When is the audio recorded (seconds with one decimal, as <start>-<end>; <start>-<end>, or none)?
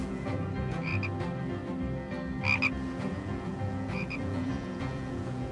0.9-3.0